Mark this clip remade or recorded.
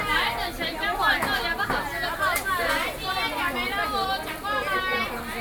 recorded